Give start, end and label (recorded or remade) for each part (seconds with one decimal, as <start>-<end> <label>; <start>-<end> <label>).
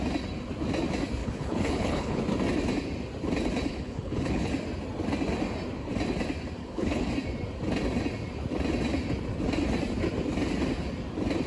0.0-1.2 recorded; 1.2-2.2 remade; 2.2-3.7 recorded; 3.7-4.5 remade; 4.5-6.6 recorded; 6.6-7.1 remade; 7.1-11.5 recorded